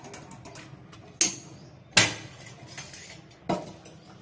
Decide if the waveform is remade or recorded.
recorded